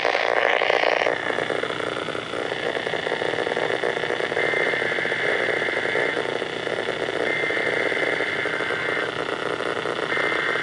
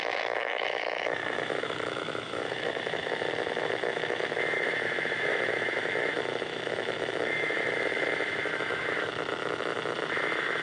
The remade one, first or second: second